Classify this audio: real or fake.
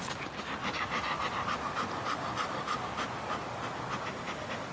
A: real